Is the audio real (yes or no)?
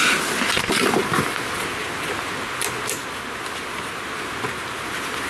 yes